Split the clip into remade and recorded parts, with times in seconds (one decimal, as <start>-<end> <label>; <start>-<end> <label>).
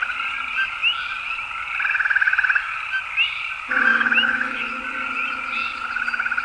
0.0-3.9 recorded; 3.9-4.8 remade; 4.8-6.4 recorded